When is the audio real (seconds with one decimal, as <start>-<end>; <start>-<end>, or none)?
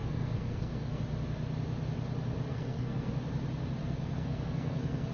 1.0-2.5; 3.1-3.8